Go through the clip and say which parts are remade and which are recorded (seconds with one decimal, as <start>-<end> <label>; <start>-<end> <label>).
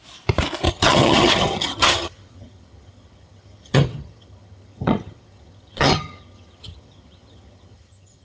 0.0-0.7 recorded; 0.7-8.2 remade